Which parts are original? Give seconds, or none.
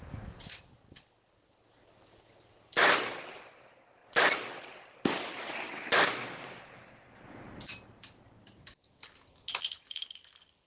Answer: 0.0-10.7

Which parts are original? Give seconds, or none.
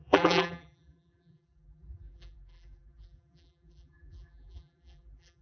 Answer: none